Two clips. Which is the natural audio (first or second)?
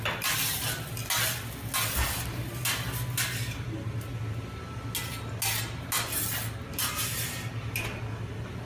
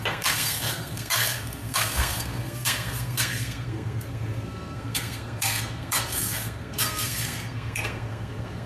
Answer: first